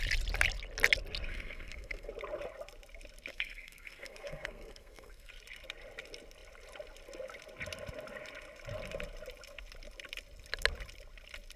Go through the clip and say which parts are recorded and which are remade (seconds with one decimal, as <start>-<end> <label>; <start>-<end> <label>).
0.0-1.3 recorded; 1.3-2.1 remade; 2.1-3.3 recorded; 3.3-5.3 remade; 5.3-11.6 recorded